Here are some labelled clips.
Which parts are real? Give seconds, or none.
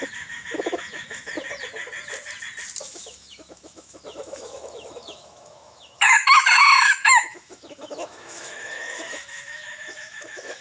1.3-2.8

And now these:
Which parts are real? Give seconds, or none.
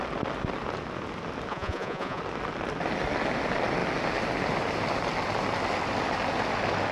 0.0-1.5; 2.2-6.9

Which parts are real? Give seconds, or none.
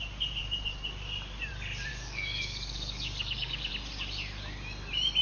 0.0-1.9; 3.7-5.2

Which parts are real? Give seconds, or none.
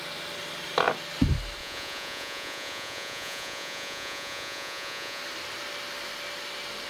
0.0-1.6; 5.2-6.9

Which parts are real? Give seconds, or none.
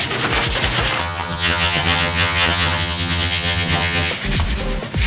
0.0-1.0; 4.1-5.1